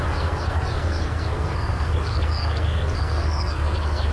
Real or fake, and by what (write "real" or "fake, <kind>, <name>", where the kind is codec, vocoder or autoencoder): fake, codec, SNAC